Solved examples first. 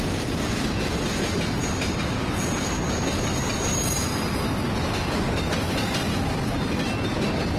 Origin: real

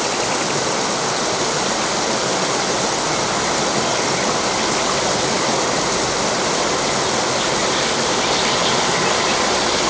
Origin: real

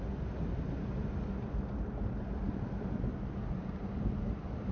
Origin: real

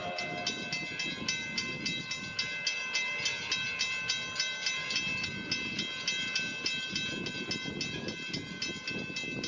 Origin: real